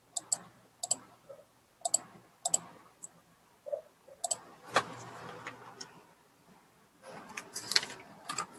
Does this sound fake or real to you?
real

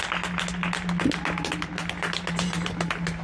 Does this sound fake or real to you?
real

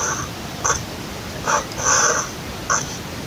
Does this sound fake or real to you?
real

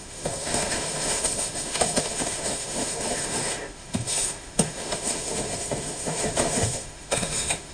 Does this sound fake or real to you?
fake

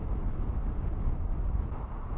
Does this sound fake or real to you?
real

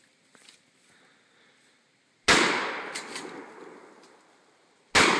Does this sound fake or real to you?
real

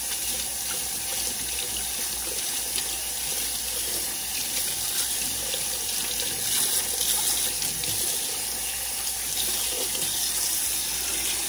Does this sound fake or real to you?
real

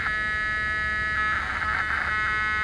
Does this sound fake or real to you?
real